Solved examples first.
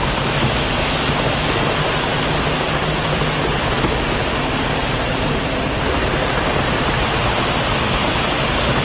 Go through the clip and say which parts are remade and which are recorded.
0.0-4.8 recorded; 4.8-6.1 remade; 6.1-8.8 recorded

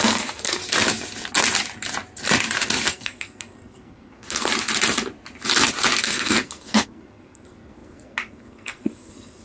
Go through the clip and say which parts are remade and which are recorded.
0.0-0.6 remade; 0.6-2.9 recorded; 2.9-4.5 remade; 4.5-6.0 recorded; 6.0-9.4 remade

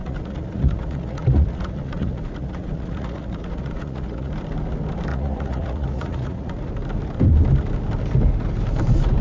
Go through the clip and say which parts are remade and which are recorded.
0.0-4.3 remade; 4.3-5.1 recorded; 5.1-6.7 remade; 6.7-9.2 recorded

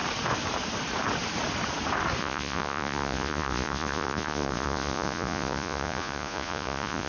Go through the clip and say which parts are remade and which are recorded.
0.0-2.2 recorded; 2.2-7.1 remade

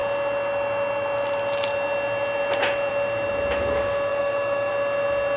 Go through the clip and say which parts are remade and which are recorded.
0.0-4.1 recorded; 4.1-4.7 remade; 4.7-5.4 recorded

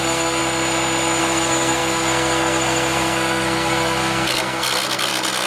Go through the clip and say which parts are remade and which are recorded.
0.0-0.4 remade; 0.4-1.2 recorded; 1.2-5.5 remade

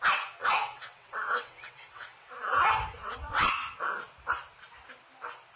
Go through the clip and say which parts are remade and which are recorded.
0.0-0.4 recorded; 0.4-2.3 remade; 2.3-3.0 recorded; 3.0-3.5 remade; 3.5-5.6 recorded

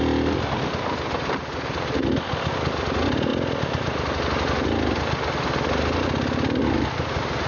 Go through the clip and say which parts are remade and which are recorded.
0.0-7.5 recorded